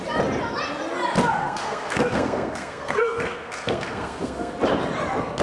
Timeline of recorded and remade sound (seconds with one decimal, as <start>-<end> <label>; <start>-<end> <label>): 0.0-1.3 recorded; 1.3-4.5 remade; 4.5-5.4 recorded